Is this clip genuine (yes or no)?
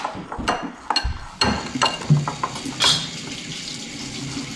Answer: yes